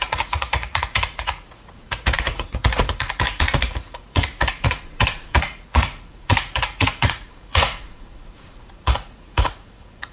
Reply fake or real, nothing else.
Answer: fake